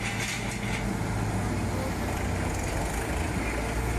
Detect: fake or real real